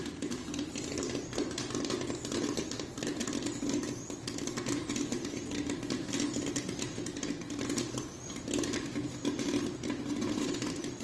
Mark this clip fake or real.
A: real